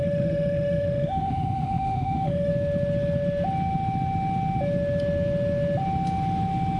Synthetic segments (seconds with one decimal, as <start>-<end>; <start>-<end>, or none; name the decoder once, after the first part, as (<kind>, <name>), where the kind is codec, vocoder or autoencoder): 0.0-2.5 (autoencoder, DAC-VAE)